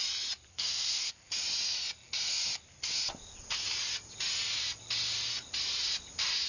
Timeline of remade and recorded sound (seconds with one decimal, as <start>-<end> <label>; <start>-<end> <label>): 0.0-0.5 recorded; 0.5-1.1 remade; 1.1-6.5 recorded